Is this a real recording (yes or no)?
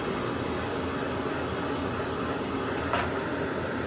yes